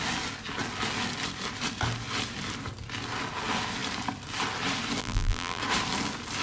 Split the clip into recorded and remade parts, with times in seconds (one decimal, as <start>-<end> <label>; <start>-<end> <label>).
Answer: 0.0-5.0 recorded; 5.0-5.6 remade; 5.6-6.4 recorded